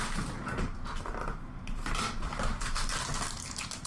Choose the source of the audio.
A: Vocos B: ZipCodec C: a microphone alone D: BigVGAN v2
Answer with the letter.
D